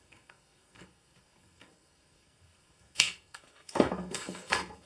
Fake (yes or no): yes